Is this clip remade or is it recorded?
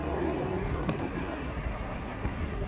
remade